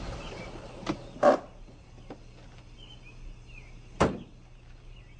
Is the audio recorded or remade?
recorded